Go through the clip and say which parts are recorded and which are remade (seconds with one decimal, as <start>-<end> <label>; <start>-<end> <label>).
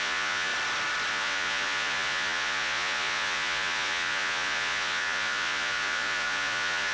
0.0-0.5 remade; 0.5-1.1 recorded; 1.1-6.9 remade